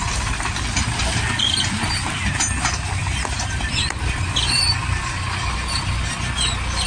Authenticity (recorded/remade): recorded